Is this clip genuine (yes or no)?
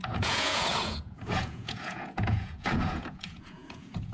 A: no